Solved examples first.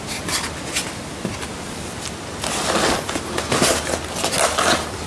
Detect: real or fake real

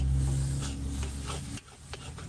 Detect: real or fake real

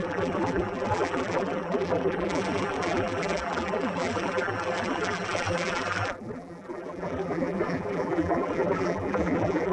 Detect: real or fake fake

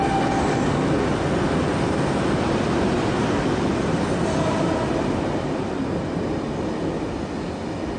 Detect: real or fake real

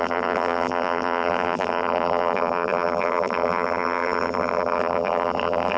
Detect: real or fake fake